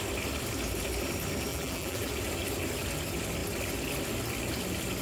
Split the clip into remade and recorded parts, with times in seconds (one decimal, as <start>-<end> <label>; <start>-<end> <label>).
0.0-1.5 recorded; 1.5-2.1 remade; 2.1-5.0 recorded